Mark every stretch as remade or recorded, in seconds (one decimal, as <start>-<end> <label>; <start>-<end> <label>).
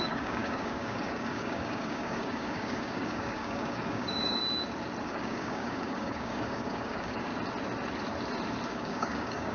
0.0-4.4 remade; 4.4-5.0 recorded; 5.0-7.3 remade; 7.3-8.7 recorded; 8.7-9.5 remade